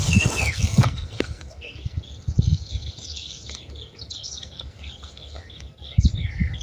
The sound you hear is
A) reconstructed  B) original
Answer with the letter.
A